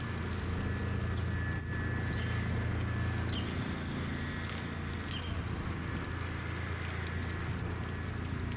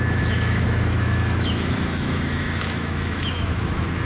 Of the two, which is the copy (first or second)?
second